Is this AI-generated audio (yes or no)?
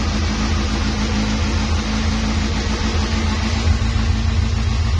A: no